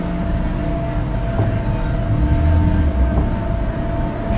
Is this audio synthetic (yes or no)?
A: no